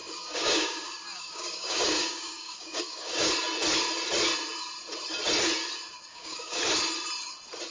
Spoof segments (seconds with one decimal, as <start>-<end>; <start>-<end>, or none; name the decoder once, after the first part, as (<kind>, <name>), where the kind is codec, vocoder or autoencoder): 0.0-3.3 (codec, DAC); 6.1-6.6

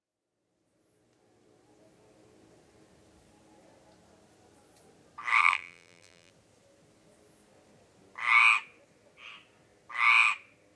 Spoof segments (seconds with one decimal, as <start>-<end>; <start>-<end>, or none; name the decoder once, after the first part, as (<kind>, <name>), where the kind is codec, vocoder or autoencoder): 5.4-6.3 (vocoder, BigVGAN v2)

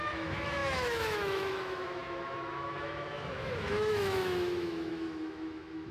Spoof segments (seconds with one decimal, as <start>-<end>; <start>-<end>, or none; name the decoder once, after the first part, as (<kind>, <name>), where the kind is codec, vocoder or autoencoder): 0.0-5.9 (autoencoder, DAC-VAE)

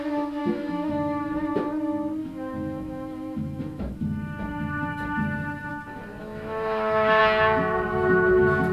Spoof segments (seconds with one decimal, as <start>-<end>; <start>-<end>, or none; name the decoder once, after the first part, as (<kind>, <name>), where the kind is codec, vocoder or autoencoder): 0.4-1.5 (autoencoder, DAC-VAE); 2.2-5.7; 6.2-7.2